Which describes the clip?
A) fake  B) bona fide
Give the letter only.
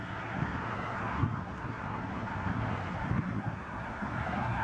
A